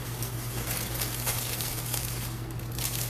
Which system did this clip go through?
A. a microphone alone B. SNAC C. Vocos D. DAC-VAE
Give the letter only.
B